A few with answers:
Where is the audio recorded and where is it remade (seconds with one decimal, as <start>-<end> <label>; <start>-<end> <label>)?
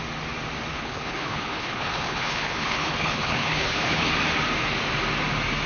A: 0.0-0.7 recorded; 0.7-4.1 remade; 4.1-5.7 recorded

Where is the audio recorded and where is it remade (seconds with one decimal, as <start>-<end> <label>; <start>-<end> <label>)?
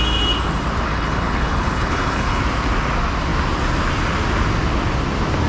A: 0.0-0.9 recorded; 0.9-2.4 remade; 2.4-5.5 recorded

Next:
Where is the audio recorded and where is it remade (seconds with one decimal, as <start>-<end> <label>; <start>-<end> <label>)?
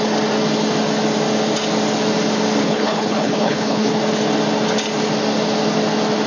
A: 0.0-2.6 recorded; 2.6-4.0 remade; 4.0-6.3 recorded